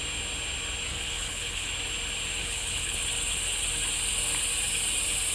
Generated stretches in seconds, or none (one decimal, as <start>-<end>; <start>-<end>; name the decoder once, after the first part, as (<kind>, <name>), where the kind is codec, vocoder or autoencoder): 0.9-1.7 (codec, HILCodec); 2.4-3.0